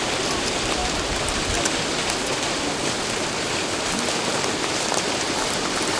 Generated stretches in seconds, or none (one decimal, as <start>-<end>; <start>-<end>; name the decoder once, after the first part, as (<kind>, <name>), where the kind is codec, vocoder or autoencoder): none